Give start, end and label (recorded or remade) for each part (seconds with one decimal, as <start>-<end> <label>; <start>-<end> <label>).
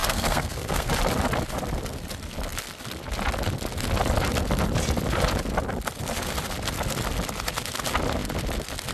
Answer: 0.0-0.9 remade; 0.9-8.9 recorded